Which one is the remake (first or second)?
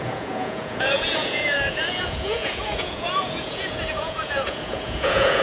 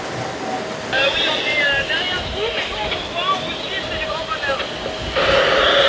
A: first